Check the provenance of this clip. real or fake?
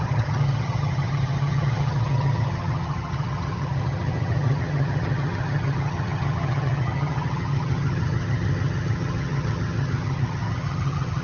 fake